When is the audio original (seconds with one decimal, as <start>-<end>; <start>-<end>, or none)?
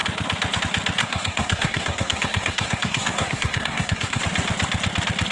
0.0-1.0; 4.2-5.3